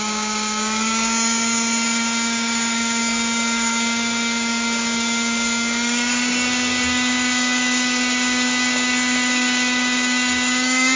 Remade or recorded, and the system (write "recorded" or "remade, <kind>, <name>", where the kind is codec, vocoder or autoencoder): remade, codec, DAC